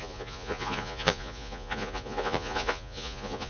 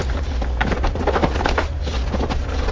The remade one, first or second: first